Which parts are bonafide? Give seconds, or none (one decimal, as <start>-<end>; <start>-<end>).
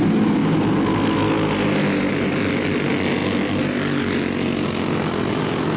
0.0-5.8